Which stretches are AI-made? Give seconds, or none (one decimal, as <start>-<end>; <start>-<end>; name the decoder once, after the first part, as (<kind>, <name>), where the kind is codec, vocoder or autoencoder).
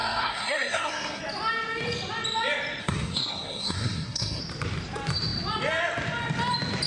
0.0-1.2 (codec, SNAC); 2.8-4.4